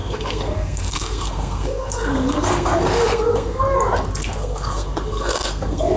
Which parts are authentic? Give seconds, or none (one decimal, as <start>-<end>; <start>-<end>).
3.6-4.2